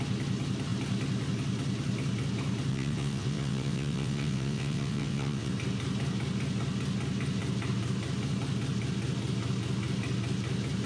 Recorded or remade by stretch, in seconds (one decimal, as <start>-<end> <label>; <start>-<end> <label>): 0.0-2.7 recorded; 2.7-5.5 remade; 5.5-10.9 recorded